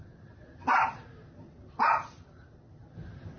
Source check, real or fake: real